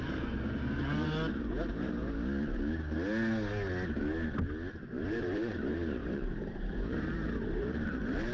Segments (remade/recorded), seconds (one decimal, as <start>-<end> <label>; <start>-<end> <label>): 0.0-0.8 remade; 0.8-4.7 recorded; 4.7-8.3 remade

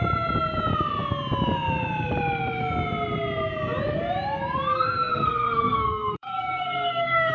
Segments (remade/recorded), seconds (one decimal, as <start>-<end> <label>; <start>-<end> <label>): 0.0-4.7 recorded; 4.7-7.3 remade